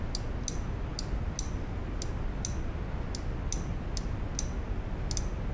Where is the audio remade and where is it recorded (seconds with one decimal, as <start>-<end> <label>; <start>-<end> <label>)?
0.0-5.5 recorded